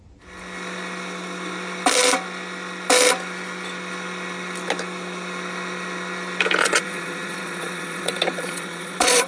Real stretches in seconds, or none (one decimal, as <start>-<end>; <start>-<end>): 0.0-6.6